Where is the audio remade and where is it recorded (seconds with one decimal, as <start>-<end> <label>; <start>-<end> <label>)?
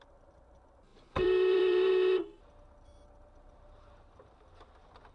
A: 0.0-0.9 recorded; 0.9-1.9 remade; 1.9-5.1 recorded